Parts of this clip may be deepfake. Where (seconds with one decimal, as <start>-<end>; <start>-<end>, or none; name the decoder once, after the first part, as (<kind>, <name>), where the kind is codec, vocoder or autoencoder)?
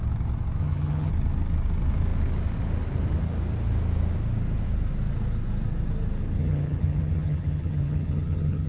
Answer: 0.6-1.1 (vocoder, HiFi-GAN); 6.4-8.7